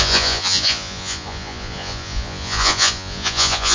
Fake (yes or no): yes